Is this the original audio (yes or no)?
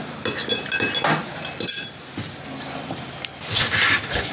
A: yes